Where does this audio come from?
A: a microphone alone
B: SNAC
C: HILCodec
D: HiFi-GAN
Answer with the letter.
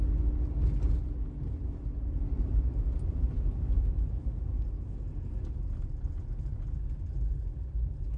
A